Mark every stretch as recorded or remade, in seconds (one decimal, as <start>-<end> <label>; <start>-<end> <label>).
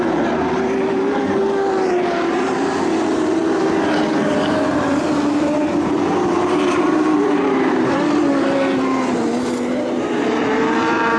0.0-3.4 remade; 3.4-4.5 recorded; 4.5-11.2 remade